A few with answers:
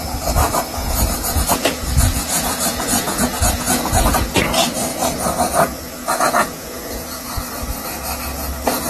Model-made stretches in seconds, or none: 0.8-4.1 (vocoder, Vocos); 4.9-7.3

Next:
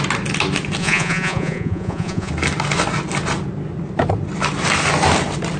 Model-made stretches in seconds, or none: 0.8-2.3 (vocoder, Vocos)